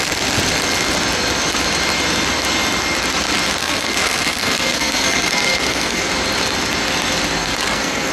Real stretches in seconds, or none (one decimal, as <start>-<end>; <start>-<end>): 0.0-3.6; 6.1-7.4